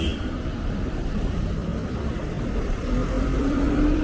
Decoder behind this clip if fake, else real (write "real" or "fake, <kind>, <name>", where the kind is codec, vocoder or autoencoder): fake, vocoder, BigVGAN v2